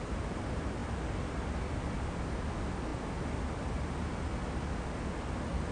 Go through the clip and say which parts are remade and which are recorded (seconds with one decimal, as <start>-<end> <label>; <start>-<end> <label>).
0.0-5.7 recorded